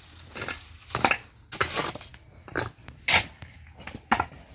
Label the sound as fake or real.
real